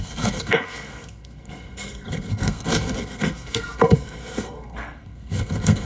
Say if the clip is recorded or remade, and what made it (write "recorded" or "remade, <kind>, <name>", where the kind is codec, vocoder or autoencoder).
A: remade, codec, SNAC